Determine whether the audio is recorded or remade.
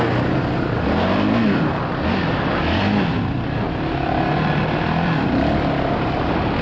recorded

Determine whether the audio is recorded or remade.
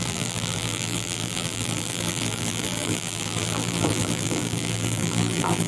remade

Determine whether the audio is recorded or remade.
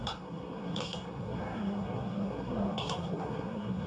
remade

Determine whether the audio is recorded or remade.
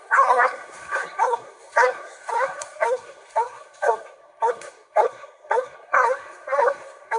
remade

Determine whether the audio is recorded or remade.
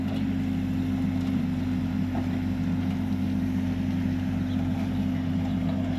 recorded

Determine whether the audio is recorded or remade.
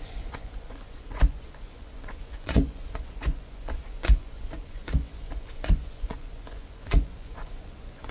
remade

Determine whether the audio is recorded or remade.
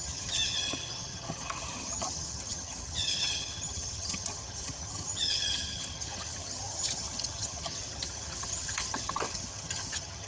remade